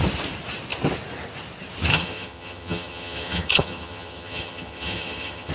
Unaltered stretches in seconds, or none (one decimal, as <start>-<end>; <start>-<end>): 0.0-1.9